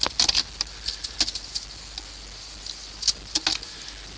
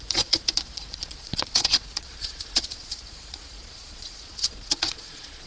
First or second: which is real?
first